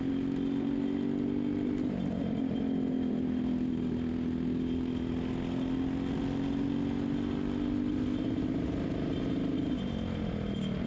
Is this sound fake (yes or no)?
no